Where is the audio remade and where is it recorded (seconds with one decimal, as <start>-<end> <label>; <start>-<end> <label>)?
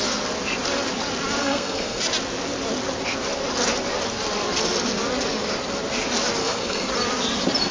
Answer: 0.0-1.4 recorded; 1.4-2.0 remade; 2.0-6.4 recorded; 6.4-6.9 remade; 6.9-7.7 recorded